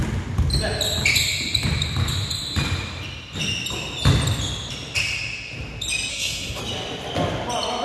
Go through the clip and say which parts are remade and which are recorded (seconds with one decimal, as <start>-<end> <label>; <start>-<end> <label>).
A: 0.0-6.1 recorded; 6.1-6.6 remade; 6.6-7.8 recorded